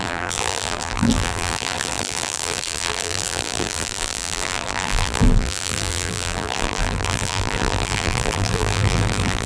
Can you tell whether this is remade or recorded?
remade